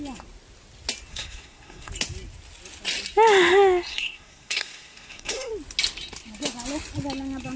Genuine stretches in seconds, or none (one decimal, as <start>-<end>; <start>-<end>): 0.0-1.1; 1.9-3.9; 5.5-7.6